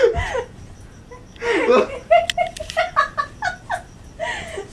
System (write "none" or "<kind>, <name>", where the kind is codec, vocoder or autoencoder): none